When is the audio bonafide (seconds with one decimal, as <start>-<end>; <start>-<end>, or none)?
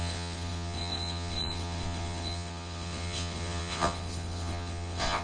none